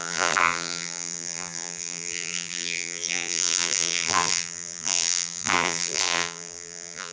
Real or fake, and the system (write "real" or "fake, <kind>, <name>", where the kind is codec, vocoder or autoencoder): fake, vocoder, BigVGAN v2